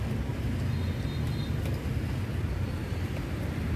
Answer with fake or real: real